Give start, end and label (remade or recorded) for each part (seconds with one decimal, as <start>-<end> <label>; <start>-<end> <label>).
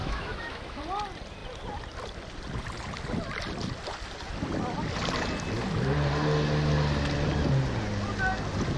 0.0-0.8 remade; 0.8-8.8 recorded